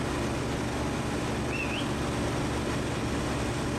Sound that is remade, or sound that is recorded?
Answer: recorded